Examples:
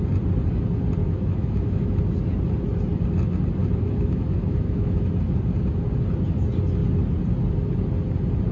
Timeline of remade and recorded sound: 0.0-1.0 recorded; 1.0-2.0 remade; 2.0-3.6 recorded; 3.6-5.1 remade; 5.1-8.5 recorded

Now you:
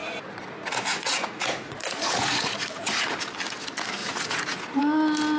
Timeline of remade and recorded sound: 0.0-3.2 remade; 3.2-4.0 recorded; 4.0-4.8 remade; 4.8-5.4 recorded

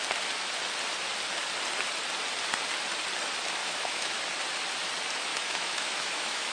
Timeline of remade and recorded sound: 0.0-3.6 recorded; 3.6-4.2 remade; 4.2-5.3 recorded; 5.3-6.5 remade

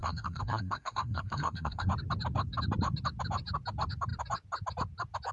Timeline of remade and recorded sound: 0.0-1.9 remade; 1.9-5.3 recorded